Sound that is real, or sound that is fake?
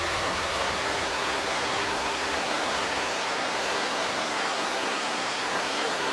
fake